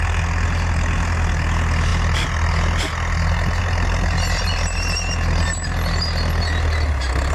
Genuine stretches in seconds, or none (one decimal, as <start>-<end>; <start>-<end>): 0.0-7.3